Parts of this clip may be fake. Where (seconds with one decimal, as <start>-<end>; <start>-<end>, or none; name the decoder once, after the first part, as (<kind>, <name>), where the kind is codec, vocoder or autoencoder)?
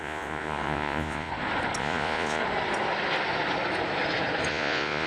0.0-1.3 (vocoder, Vocos); 1.8-2.4; 4.5-5.1